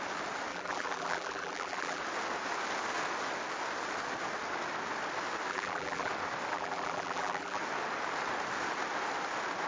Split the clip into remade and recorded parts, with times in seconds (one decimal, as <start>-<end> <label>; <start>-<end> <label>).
0.0-0.5 recorded; 0.5-2.0 remade; 2.0-5.5 recorded; 5.5-6.1 remade; 6.1-6.5 recorded; 6.5-7.6 remade; 7.6-9.7 recorded